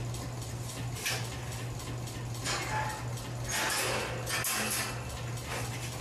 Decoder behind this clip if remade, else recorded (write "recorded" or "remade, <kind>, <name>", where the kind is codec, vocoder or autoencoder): recorded